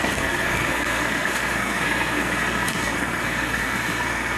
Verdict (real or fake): fake